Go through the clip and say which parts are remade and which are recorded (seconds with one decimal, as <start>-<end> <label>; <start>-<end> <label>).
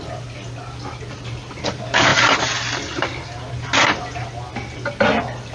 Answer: 0.0-5.5 recorded